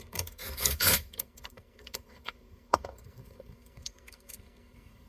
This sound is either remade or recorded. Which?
remade